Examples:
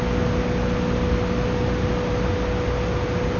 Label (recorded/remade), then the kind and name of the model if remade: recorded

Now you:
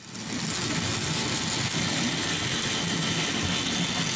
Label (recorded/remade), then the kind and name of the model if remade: recorded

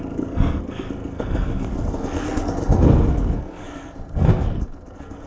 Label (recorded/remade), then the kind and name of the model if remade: remade, codec, SNAC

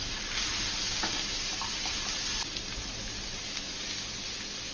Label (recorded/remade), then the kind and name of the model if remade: recorded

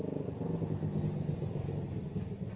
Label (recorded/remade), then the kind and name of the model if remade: recorded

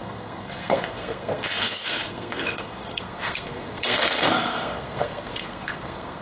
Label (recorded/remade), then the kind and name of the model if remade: remade, codec, SNAC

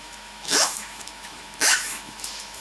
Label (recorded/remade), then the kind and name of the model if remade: remade, autoencoder, DAC-VAE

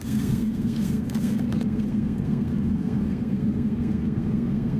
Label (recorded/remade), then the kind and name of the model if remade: remade, codec, SNAC